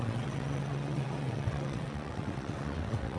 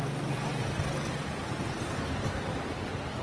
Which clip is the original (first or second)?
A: second